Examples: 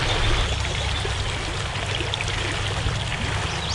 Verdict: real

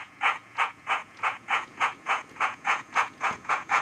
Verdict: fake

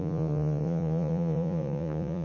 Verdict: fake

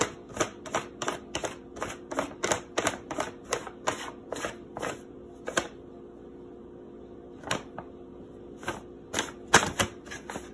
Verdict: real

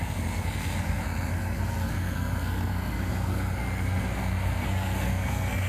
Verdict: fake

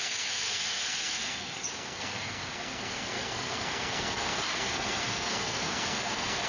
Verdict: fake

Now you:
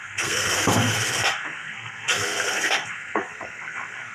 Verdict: fake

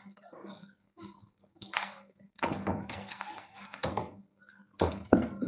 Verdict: fake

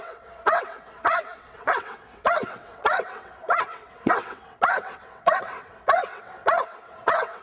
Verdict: fake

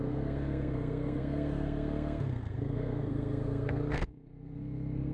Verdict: fake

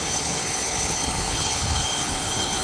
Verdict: fake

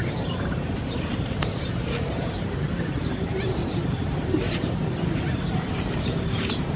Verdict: fake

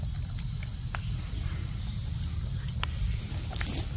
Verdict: real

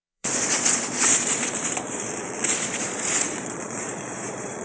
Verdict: fake